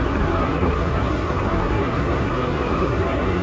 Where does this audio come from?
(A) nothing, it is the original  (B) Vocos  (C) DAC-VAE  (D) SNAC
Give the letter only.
D